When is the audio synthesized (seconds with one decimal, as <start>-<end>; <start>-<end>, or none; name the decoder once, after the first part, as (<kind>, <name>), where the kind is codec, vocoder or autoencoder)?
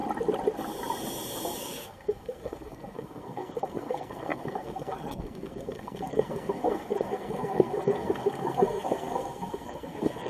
1.6-10.3 (codec, SNAC)